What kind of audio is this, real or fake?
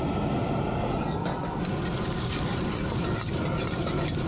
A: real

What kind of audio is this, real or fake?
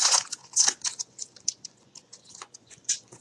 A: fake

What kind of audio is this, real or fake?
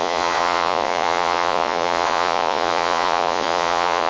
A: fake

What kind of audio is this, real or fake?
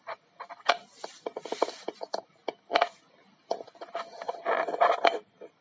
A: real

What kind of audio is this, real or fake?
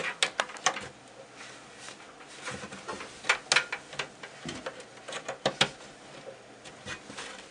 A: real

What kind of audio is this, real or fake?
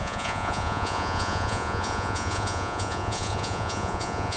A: fake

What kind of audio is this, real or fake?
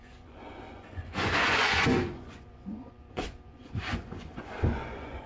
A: fake